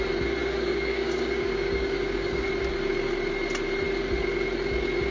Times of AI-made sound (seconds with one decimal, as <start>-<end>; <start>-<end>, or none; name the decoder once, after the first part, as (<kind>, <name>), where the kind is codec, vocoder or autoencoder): 0.4-2.5 (codec, DAC)